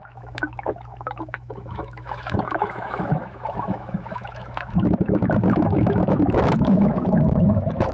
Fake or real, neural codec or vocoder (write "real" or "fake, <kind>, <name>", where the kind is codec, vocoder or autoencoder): fake, autoencoder, DAC-VAE